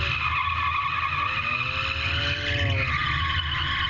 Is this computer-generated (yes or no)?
no